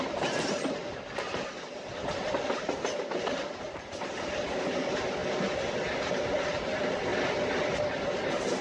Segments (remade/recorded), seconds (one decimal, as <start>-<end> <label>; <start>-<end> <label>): 0.0-8.6 recorded